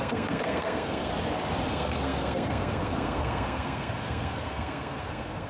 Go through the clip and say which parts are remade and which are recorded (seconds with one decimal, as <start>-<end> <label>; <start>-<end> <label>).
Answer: 0.0-1.1 remade; 1.1-1.7 recorded; 1.7-5.5 remade